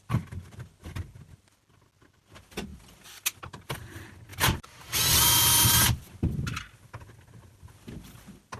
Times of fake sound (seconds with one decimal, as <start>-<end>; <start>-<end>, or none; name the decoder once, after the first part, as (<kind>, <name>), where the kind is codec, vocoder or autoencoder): none

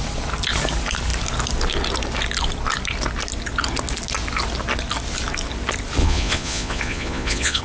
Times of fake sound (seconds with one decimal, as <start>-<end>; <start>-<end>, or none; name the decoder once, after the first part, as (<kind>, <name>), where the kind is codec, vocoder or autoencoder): 6.0-7.6 (vocoder, Vocos)

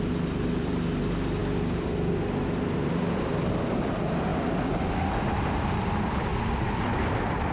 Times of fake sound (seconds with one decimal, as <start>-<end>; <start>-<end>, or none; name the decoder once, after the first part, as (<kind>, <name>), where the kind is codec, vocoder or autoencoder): none